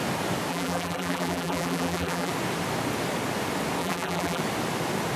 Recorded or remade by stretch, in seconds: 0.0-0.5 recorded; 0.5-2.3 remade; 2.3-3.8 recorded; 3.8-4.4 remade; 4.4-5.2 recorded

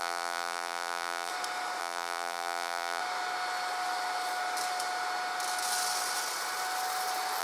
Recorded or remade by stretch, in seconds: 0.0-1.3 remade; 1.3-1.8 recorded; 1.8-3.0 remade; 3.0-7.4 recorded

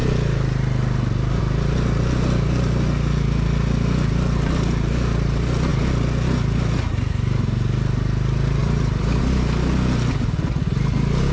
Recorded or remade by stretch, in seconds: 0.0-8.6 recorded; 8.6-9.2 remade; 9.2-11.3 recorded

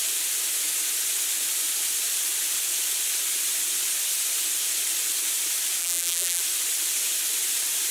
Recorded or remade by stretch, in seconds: 0.0-5.8 recorded; 5.8-6.4 remade; 6.4-7.9 recorded

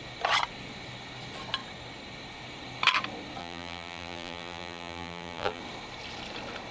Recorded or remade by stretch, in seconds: 0.0-3.4 recorded; 3.4-5.6 remade; 5.6-6.7 recorded